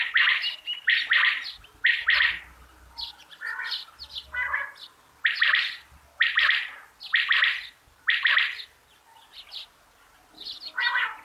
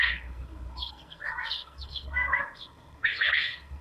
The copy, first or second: second